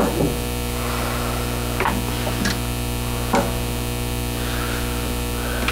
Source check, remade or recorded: recorded